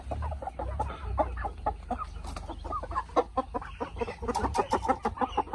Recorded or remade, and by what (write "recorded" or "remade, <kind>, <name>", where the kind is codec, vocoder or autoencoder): recorded